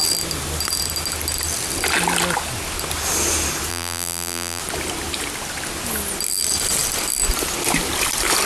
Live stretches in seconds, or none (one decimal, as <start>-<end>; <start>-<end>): 0.0-3.7; 4.6-8.5